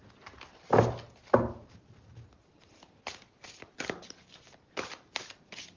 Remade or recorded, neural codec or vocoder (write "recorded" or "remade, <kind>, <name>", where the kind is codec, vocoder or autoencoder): recorded